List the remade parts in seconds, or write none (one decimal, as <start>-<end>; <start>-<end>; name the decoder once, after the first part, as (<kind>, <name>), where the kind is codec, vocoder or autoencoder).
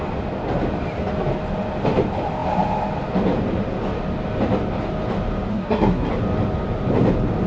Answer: 5.5-6.1 (codec, SNAC)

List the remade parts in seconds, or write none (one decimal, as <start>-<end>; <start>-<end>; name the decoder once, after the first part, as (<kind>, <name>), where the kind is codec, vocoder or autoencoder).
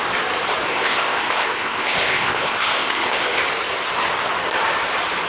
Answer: 0.7-3.4 (codec, ZipCodec)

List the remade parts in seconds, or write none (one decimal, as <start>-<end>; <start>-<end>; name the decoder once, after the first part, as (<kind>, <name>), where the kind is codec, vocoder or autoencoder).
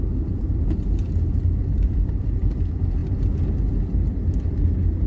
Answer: 1.6-2.4 (vocoder, BigVGAN v2)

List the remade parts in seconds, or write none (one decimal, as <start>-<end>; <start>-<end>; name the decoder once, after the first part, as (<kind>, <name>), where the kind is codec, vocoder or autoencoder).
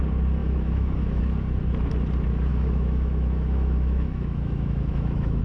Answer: 0.4-1.2 (autoencoder, DAC-VAE); 2.5-5.4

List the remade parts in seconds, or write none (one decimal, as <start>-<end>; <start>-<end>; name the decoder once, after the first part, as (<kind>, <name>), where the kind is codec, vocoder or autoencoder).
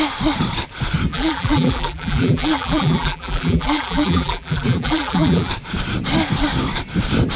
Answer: 1.1-5.5 (vocoder, BigVGAN v2)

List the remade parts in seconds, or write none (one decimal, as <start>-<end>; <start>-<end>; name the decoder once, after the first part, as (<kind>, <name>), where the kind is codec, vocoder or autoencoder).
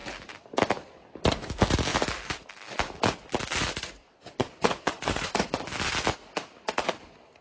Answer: 4.0-5.6 (vocoder, Vocos)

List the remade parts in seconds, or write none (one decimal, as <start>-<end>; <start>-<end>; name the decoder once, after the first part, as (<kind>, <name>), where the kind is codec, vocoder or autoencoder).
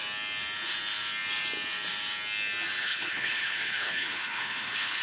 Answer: 2.8-5.0 (codec, HILCodec)